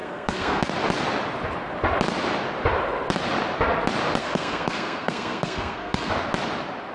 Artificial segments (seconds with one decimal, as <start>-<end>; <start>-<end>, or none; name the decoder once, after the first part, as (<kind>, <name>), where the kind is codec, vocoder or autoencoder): 0.0-0.7 (codec, SNAC); 4.2-6.1